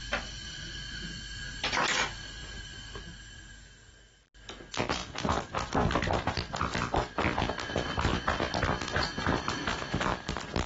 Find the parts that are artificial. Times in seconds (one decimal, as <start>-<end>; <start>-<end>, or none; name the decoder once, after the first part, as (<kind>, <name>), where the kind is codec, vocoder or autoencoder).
none